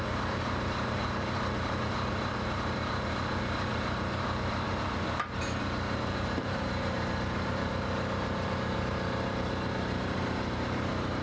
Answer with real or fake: fake